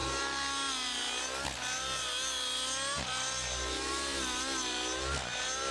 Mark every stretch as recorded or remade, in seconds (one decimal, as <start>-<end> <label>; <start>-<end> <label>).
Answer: 0.0-5.7 recorded